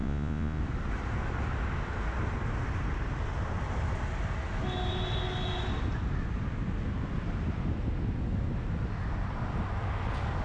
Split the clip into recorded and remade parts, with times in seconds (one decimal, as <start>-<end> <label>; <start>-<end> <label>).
0.0-0.6 remade; 0.6-10.4 recorded